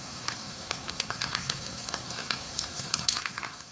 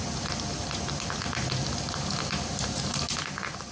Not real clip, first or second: first